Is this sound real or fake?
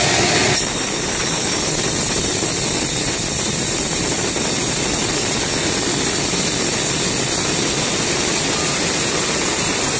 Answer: real